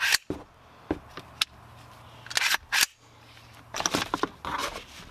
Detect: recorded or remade recorded